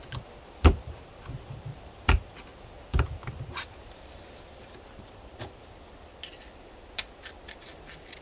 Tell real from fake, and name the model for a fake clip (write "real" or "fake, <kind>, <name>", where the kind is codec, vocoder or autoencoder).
real